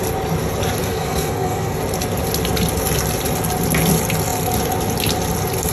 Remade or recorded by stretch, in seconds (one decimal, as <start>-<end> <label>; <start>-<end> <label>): 0.0-0.8 recorded; 0.8-1.8 remade; 1.8-5.7 recorded